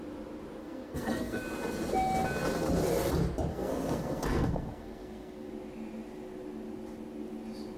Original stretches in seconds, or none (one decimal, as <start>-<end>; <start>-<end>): 0.0-0.6; 1.4-3.5; 5.5-7.8